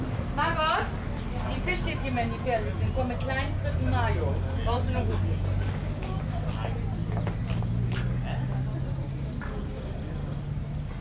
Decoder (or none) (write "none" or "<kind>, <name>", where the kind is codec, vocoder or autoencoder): none